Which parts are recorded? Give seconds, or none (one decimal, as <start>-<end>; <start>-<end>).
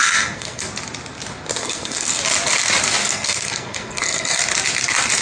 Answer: 0.7-1.6; 2.2-3.0; 4.4-5.2